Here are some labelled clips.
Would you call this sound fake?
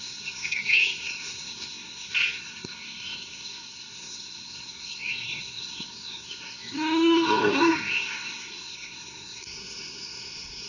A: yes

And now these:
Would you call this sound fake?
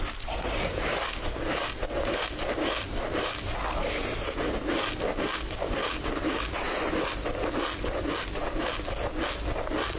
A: no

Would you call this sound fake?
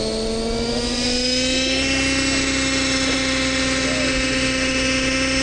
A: no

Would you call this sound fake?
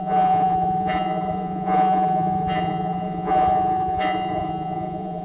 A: yes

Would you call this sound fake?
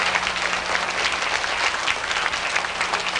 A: no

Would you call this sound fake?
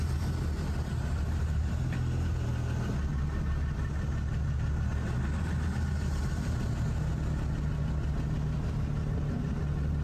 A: no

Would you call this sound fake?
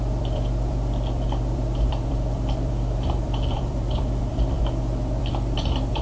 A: yes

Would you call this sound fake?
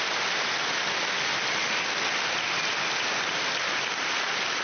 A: no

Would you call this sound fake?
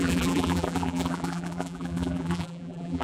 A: yes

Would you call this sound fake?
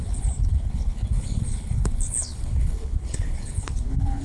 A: yes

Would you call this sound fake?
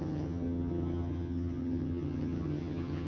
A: yes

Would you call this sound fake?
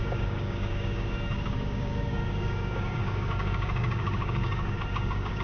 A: yes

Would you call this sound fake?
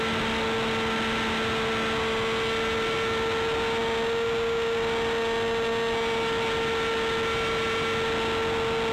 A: no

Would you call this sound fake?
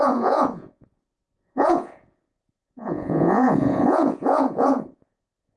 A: yes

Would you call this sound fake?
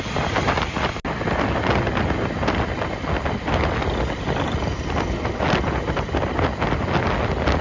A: no